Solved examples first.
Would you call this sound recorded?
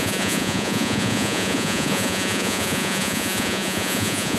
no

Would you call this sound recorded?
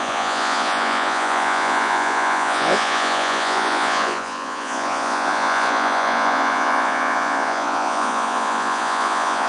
no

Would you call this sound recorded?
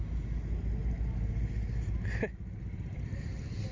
yes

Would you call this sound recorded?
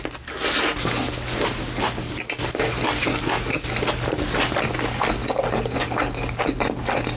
yes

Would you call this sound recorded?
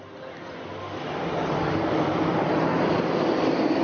yes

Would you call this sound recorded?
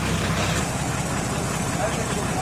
yes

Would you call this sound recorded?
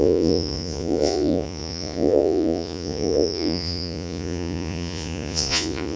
no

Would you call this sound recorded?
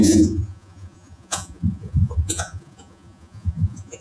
no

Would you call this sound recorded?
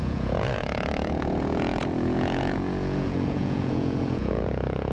no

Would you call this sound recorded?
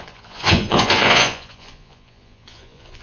no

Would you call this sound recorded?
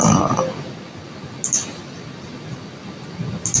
yes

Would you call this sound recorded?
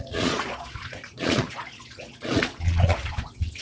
no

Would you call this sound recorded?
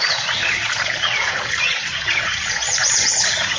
no